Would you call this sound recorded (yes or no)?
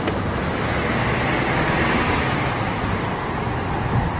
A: yes